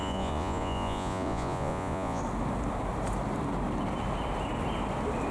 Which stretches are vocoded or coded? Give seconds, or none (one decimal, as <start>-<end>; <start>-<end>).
0.0-2.2